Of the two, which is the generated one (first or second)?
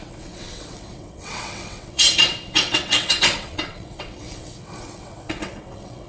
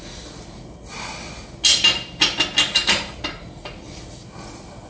first